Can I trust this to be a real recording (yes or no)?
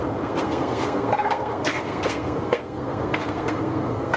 no